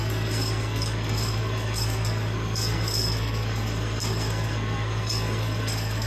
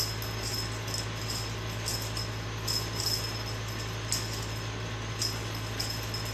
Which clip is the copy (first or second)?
first